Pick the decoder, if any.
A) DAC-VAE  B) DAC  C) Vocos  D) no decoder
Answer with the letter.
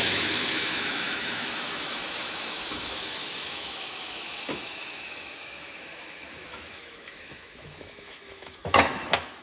A